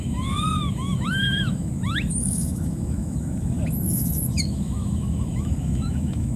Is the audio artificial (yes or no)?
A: yes